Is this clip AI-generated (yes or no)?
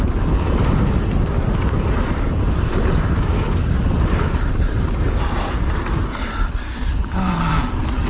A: no